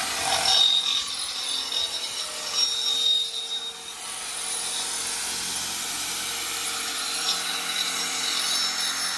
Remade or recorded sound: recorded